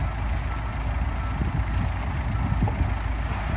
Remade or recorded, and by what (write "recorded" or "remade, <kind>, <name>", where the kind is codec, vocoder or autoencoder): recorded